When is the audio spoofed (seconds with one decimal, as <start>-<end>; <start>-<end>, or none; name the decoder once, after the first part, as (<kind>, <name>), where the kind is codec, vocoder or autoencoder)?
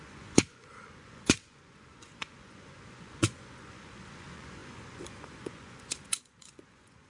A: 0.0-7.1 (vocoder, Vocos)